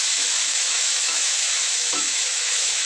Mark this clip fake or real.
fake